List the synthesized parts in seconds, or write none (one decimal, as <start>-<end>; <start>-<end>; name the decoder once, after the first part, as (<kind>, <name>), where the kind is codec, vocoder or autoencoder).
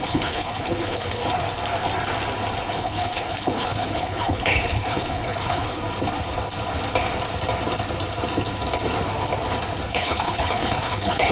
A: 0.0-1.2 (codec, HILCodec); 2.6-5.8; 9.9-11.3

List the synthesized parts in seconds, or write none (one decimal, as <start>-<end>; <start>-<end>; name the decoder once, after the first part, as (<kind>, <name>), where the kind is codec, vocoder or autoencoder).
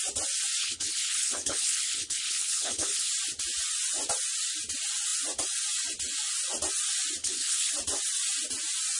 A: 0.6-3.1 (codec, HILCodec); 7.2-7.7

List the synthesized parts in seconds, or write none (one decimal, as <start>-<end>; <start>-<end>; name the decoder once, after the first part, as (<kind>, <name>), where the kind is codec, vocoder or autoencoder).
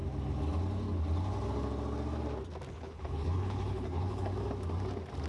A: 2.7-4.3 (codec, HILCodec)